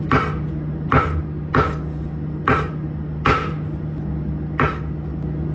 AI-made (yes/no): no